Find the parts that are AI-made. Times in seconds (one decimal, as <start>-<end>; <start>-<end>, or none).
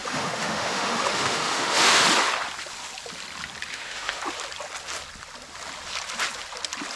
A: 0.0-2.0; 3.7-4.2